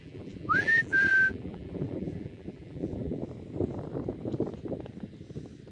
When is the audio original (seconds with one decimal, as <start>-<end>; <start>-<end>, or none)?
3.2-5.7